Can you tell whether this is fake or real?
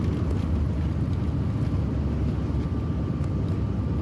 real